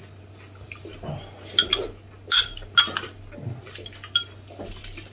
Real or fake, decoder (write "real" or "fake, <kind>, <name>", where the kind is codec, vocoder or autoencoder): real